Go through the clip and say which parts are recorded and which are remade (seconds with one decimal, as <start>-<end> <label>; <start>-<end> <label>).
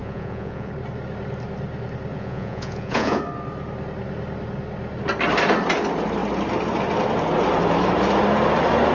0.0-0.7 remade; 0.7-2.1 recorded; 2.1-3.2 remade; 3.2-8.9 recorded